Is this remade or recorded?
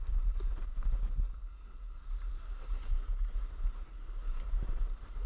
recorded